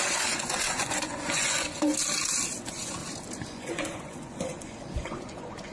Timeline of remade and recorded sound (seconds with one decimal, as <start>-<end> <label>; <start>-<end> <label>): 0.0-1.9 remade; 1.9-2.6 recorded; 2.6-3.0 remade; 3.0-3.5 recorded; 3.5-5.7 remade